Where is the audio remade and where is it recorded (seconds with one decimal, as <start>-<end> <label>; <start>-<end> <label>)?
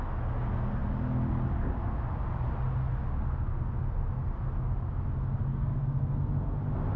0.0-5.5 recorded; 5.5-6.3 remade; 6.3-7.0 recorded